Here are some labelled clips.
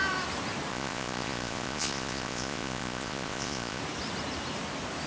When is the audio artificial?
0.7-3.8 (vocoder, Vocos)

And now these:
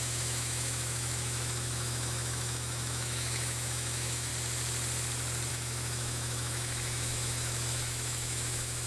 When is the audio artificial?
0.0-4.3 (autoencoder, DAC-VAE); 5.5-8.9

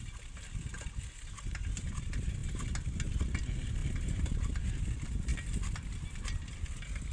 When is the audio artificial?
none

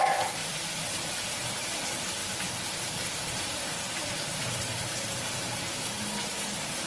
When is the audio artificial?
0.0-2.2 (vocoder, BigVGAN v2); 3.1-6.9

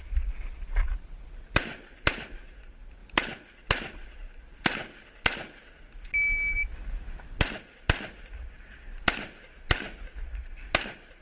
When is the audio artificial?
none

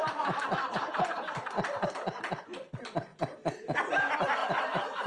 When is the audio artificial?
4.4-5.1 (vocoder, BigVGAN v2)